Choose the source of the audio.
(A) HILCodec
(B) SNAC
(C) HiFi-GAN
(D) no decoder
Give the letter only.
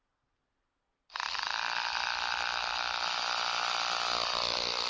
D